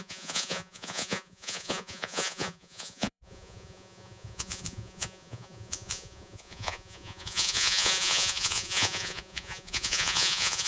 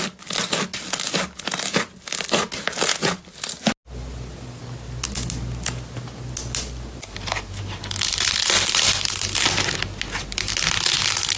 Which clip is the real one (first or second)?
second